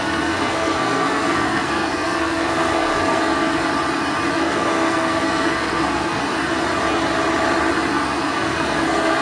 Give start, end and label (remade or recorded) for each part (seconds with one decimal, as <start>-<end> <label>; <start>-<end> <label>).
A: 0.0-3.7 remade; 3.7-4.3 recorded; 4.3-6.2 remade; 6.2-8.2 recorded; 8.2-9.2 remade